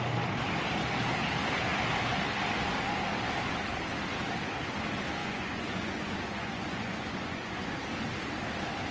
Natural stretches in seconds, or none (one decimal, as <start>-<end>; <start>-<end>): 0.0-5.2; 7.8-8.9

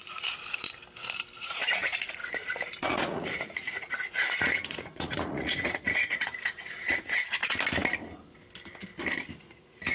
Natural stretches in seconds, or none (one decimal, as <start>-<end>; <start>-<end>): 0.8-1.4; 7.4-9.3

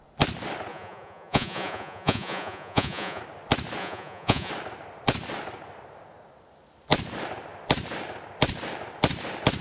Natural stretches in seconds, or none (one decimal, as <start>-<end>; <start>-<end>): 0.0-0.7; 3.2-3.8; 4.5-9.6

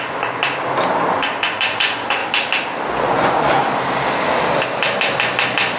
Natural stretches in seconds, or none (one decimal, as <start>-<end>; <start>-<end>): 0.4-1.1; 2.2-2.9; 3.6-5.8

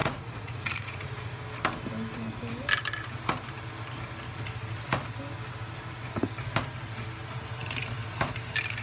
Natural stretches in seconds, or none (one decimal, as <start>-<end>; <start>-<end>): 1.4-8.8

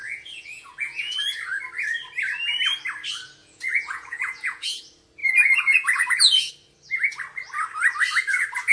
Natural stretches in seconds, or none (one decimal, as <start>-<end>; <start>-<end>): 1.6-3.4; 4.8-5.2; 6.5-8.7

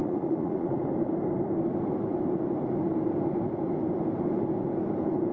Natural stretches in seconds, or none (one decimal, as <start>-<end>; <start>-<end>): 0.8-5.3

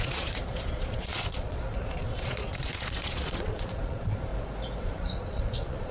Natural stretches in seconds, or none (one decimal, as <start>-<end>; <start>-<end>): 4.3-4.8